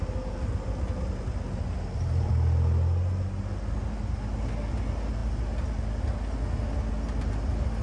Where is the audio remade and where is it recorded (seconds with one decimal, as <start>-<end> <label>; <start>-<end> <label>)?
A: 0.0-7.8 recorded